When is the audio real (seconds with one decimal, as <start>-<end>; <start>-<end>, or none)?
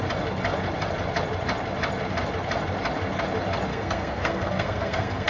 0.0-3.7